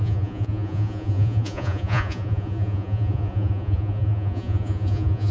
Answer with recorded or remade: remade